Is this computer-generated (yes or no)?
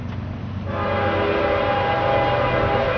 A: no